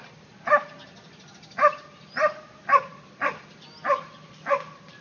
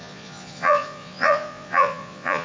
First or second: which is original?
first